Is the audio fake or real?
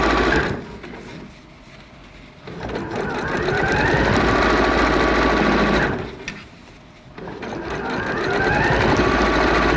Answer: real